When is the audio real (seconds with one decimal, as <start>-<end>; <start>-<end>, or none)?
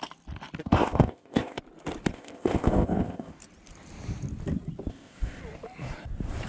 0.0-0.6; 1.6-2.1; 3.3-4.9; 5.4-6.5